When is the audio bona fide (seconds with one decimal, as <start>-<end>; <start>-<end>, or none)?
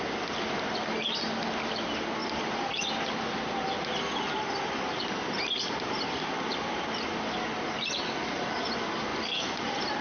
0.0-10.0